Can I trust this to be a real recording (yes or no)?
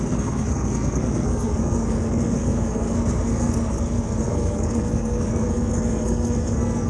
no